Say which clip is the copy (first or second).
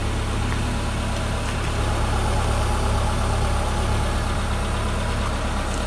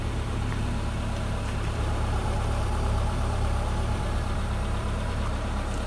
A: second